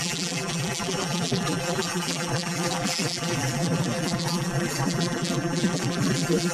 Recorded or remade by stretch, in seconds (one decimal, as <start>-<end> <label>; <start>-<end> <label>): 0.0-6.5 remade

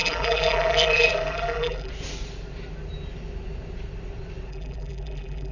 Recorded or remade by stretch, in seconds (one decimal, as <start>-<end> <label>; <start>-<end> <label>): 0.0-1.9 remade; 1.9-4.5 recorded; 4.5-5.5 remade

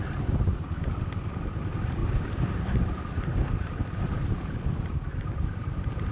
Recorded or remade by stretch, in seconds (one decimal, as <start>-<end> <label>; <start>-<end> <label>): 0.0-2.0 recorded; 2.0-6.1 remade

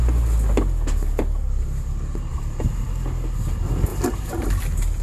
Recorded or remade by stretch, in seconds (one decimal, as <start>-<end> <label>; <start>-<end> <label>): 0.0-2.3 recorded; 2.3-2.9 remade; 2.9-3.9 recorded; 3.9-4.6 remade; 4.6-5.0 recorded

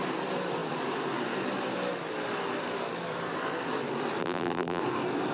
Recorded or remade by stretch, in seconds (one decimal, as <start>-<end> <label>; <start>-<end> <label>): 0.0-4.2 recorded; 4.2-4.8 remade; 4.8-5.3 recorded

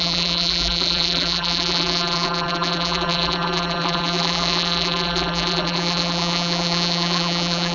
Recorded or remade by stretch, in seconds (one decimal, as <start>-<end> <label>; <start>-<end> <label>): 0.0-7.7 remade

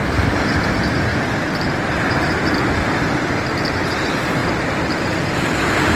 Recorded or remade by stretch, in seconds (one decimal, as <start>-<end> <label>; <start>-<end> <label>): 0.0-1.1 recorded; 1.1-3.8 remade; 3.8-6.0 recorded